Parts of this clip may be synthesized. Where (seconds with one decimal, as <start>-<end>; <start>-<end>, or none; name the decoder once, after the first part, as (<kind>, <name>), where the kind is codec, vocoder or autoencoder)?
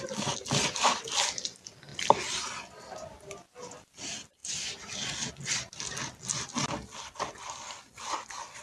none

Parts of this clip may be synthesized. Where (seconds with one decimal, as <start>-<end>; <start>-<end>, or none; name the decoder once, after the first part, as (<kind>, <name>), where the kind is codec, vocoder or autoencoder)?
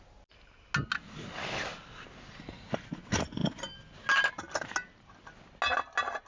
none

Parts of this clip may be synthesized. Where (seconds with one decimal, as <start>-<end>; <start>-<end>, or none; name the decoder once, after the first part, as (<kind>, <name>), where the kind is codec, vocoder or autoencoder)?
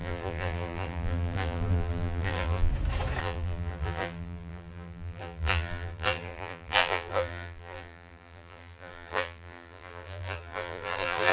0.0-2.7 (vocoder, BigVGAN v2); 3.2-11.3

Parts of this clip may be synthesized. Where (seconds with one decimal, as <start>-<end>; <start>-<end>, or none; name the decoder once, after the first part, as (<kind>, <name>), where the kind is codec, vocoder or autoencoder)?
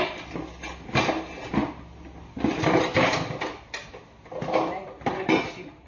none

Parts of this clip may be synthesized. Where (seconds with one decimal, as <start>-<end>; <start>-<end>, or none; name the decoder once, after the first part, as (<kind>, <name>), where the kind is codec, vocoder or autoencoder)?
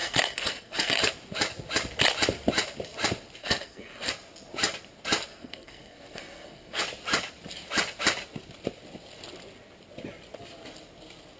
0.0-1.0 (codec, SNAC); 3.4-4.1; 5.3-6.8